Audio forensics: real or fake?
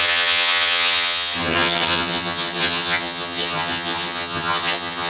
fake